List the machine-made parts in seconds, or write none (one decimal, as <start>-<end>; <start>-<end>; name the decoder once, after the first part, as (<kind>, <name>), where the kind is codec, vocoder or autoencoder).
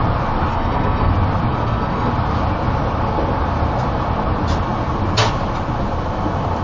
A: 0.5-1.1 (codec, SNAC); 1.5-2.1